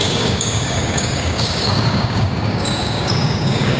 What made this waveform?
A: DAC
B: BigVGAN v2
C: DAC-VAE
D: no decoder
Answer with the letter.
A